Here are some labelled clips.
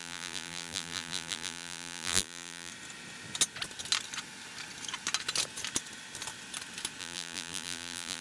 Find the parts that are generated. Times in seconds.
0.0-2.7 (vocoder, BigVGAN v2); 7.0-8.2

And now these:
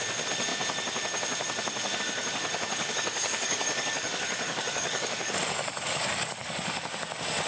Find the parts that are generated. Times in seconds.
2.5-6.8 (codec, DAC)